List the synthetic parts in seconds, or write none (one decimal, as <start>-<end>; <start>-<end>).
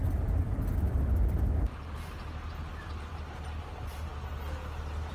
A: none